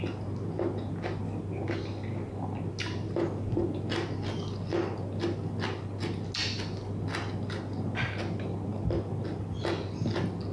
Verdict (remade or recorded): recorded